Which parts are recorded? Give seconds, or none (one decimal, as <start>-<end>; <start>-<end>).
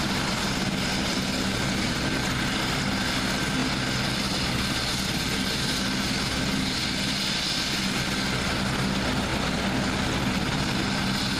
0.0-11.4